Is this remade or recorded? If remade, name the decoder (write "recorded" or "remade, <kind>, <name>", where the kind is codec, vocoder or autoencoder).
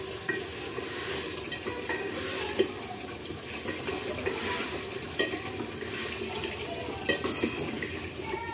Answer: recorded